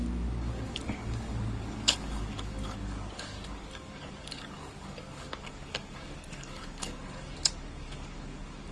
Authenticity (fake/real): fake